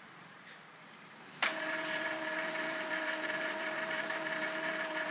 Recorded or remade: remade